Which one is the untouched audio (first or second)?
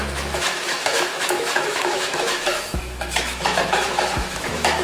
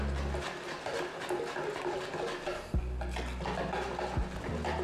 second